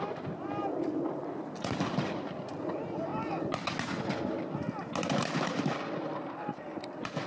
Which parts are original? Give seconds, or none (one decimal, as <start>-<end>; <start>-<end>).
3.1-5.0